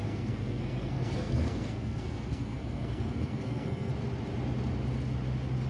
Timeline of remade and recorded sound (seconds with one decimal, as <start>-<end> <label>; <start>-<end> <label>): 0.0-3.9 remade; 3.9-5.7 recorded